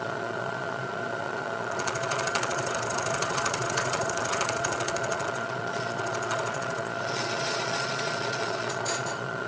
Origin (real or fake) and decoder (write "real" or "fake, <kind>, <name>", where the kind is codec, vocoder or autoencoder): fake, vocoder, Vocos